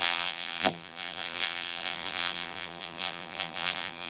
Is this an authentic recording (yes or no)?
no